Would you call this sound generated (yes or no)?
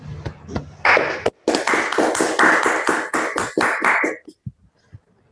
no